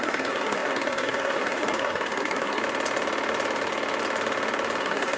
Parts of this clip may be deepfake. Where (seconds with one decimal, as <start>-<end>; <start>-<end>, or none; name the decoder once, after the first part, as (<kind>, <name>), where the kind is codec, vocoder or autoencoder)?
0.0-2.6 (codec, SNAC); 4.8-5.2